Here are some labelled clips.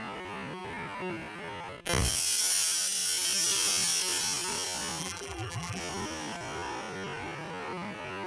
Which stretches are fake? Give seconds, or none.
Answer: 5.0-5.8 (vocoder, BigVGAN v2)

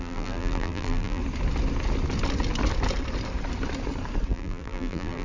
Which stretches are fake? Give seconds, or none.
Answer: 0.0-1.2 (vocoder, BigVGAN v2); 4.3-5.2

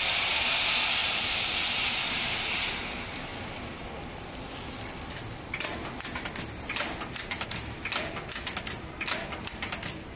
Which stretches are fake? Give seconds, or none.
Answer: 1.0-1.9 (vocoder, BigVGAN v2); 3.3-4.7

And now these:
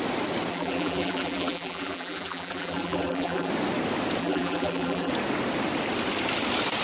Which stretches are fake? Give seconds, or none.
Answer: 0.5-3.5 (vocoder, BigVGAN v2); 4.2-5.1

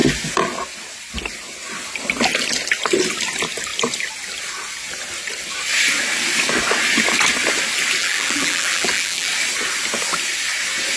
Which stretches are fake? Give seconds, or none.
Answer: 8.0-9.3 (vocoder, BigVGAN v2)